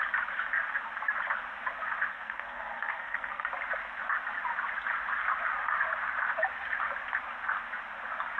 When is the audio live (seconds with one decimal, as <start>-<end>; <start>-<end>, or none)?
0.0-2.1; 3.5-8.4